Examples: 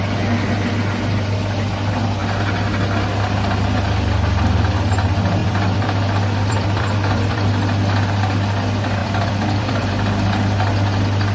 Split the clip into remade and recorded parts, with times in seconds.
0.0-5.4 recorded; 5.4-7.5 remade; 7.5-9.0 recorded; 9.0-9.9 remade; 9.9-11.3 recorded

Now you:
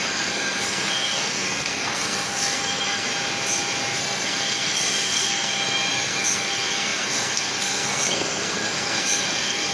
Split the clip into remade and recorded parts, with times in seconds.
0.0-3.1 remade; 3.1-4.0 recorded; 4.0-9.7 remade

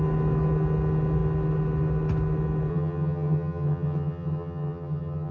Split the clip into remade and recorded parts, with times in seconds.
0.0-2.7 recorded; 2.7-5.3 remade

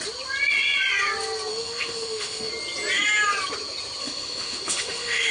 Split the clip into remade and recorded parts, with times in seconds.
0.0-1.5 recorded; 1.5-2.5 remade; 2.5-4.0 recorded; 4.0-5.3 remade